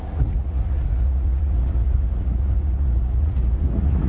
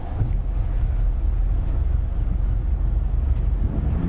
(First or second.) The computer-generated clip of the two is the first